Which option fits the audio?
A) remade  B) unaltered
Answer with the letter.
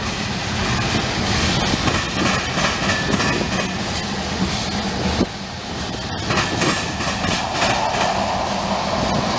B